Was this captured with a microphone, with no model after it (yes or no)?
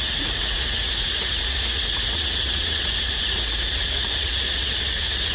no